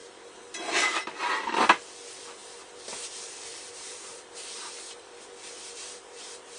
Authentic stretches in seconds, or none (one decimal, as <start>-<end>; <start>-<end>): 1.1-2.4